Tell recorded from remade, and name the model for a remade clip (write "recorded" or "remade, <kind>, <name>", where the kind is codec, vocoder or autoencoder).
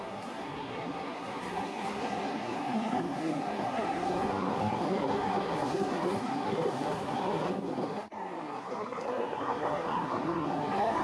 remade, codec, SNAC